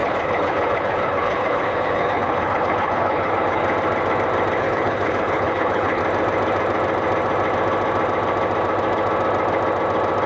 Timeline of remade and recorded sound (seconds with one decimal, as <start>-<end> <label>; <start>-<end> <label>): 0.0-3.6 remade; 3.6-4.6 recorded; 4.6-6.0 remade; 6.0-10.3 recorded